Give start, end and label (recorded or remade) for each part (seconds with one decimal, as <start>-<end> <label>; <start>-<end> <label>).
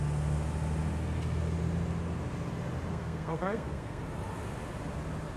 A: 0.0-2.9 recorded; 2.9-4.0 remade; 4.0-5.4 recorded